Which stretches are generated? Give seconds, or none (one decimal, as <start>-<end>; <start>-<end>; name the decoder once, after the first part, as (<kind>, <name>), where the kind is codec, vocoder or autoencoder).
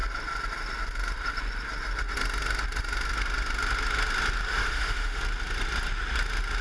4.5-5.2 (autoencoder, DAC-VAE)